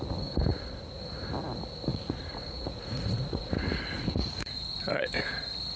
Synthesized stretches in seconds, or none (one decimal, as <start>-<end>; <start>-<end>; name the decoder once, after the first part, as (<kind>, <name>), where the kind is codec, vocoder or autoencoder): 0.5-1.0 (vocoder, Vocos); 1.9-5.3